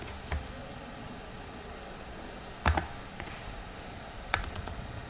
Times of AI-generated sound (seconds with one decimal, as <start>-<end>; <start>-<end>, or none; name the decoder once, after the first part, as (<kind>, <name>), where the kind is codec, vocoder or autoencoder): 0.6-2.2 (vocoder, Vocos); 3.1-5.1